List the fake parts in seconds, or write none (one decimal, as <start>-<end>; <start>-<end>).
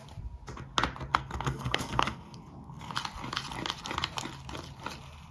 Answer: 1.1-2.9